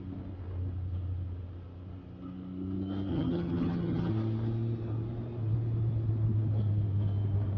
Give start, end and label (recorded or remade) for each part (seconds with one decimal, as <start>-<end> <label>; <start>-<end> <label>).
0.0-3.1 recorded; 3.1-4.1 remade; 4.1-7.6 recorded